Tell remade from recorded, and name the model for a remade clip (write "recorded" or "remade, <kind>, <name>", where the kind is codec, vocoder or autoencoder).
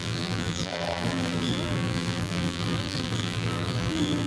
remade, vocoder, BigVGAN v2